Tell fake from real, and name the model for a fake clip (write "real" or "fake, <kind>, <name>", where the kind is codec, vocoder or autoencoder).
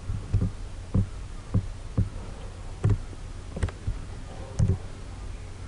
real